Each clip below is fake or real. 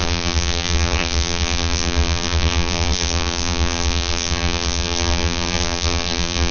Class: fake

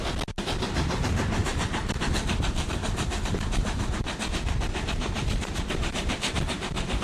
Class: fake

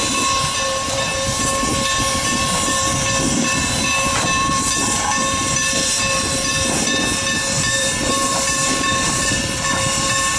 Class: fake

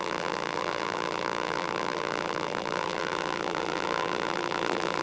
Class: fake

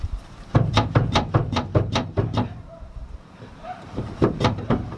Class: fake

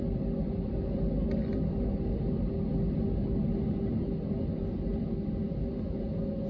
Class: real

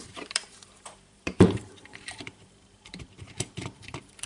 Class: fake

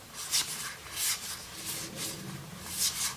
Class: real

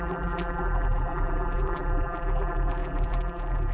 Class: fake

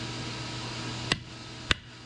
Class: real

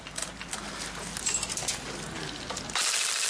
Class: real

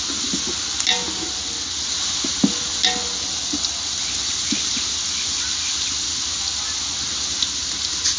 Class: real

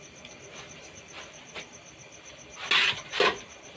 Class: real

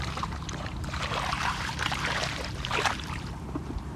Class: fake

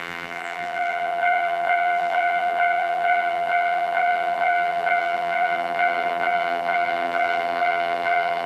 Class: fake